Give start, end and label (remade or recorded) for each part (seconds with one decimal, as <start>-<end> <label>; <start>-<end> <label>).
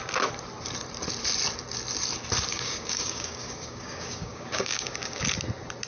0.0-2.5 recorded; 2.5-5.2 remade; 5.2-5.9 recorded